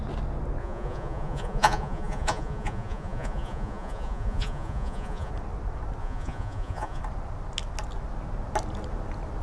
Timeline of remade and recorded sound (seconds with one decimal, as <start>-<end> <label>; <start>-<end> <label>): 0.0-0.6 recorded; 0.6-5.3 remade; 5.3-6.0 recorded; 6.0-7.0 remade; 7.0-9.4 recorded